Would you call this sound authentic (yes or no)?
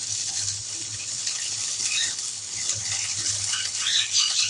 no